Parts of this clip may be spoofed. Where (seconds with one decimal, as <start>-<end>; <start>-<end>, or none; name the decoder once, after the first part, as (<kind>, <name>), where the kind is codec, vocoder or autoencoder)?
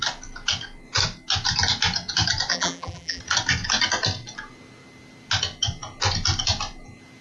2.5-3.2 (vocoder, BigVGAN v2)